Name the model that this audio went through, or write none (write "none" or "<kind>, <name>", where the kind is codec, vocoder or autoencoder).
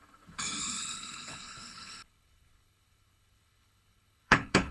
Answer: codec, HILCodec